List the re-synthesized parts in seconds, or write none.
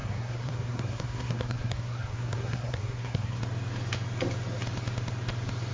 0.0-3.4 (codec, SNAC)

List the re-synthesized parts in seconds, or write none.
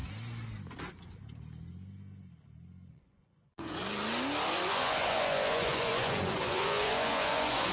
2.9-3.8 (vocoder, Vocos); 4.5-7.7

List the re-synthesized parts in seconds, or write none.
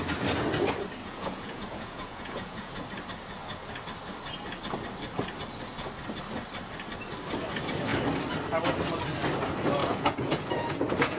1.0-2.8 (vocoder, Vocos); 9.8-11.2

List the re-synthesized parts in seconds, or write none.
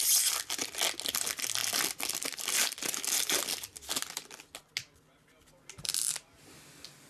none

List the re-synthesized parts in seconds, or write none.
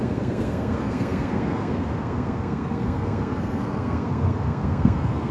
0.0-5.3 (codec, SNAC)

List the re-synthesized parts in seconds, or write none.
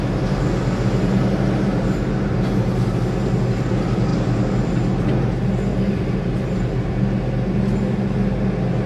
5.7-6.9 (vocoder, BigVGAN v2)